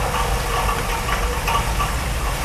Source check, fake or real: real